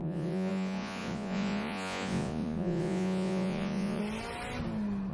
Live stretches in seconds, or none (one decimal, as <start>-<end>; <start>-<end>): 4.0-5.1